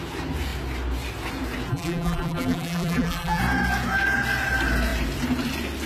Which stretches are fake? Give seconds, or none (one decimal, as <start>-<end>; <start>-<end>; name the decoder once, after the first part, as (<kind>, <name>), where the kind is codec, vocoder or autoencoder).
1.7-3.4 (vocoder, BigVGAN v2)